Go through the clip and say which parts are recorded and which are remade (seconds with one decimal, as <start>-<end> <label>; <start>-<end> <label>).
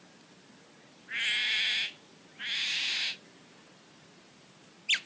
0.0-1.4 recorded; 1.4-4.5 remade; 4.5-5.1 recorded